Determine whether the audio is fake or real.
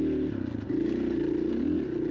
real